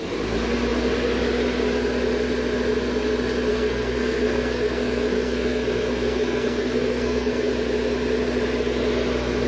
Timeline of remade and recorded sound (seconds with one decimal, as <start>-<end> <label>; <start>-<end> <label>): 0.0-3.5 recorded; 3.5-7.5 remade; 7.5-9.5 recorded